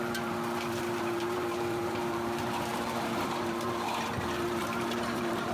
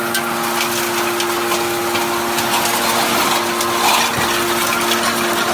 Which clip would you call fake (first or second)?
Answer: first